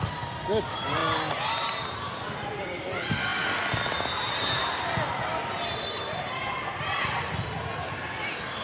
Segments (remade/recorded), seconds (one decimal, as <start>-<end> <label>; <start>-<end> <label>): 0.0-8.6 recorded